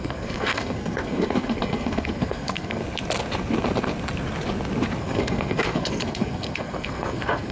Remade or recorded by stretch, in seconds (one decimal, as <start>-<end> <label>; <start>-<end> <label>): 0.0-2.8 remade; 2.8-5.0 recorded; 5.0-7.5 remade